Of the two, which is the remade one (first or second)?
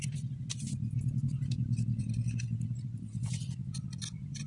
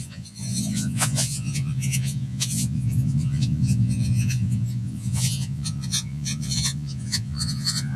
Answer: second